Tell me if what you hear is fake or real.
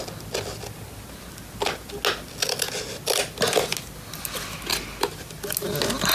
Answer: real